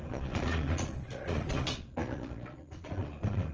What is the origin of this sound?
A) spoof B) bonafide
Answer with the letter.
A